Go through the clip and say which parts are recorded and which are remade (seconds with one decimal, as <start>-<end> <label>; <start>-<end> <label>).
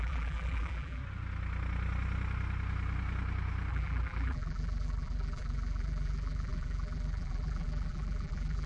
0.0-1.0 remade; 1.0-3.7 recorded; 3.7-8.7 remade